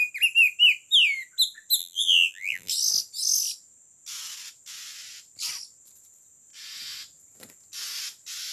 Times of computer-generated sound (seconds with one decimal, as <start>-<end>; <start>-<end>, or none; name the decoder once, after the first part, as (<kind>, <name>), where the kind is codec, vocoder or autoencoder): 1.8-2.7 (vocoder, BigVGAN v2)